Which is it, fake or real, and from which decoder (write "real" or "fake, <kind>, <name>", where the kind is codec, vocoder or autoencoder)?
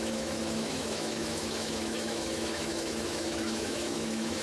fake, autoencoder, DAC-VAE